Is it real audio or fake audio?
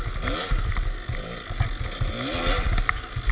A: real